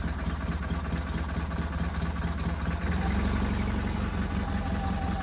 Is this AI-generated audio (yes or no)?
no